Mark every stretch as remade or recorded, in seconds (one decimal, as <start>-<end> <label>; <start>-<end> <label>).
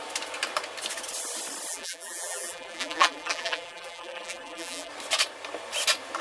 0.0-1.7 recorded; 1.7-4.9 remade; 4.9-6.2 recorded